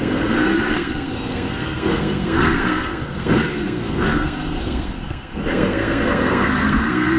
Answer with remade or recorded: remade